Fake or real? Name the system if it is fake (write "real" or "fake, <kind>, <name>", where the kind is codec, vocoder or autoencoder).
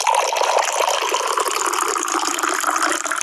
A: real